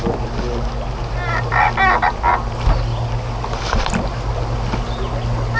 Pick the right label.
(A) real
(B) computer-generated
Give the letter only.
A